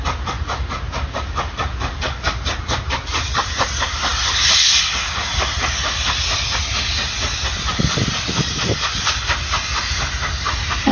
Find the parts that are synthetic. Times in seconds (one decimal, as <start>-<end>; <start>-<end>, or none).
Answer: none